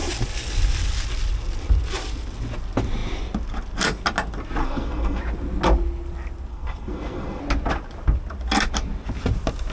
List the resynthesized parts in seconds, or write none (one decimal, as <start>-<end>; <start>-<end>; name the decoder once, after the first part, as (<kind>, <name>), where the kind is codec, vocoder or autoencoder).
4.6-5.2 (codec, SNAC); 6.5-7.4